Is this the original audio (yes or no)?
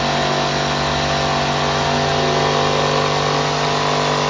yes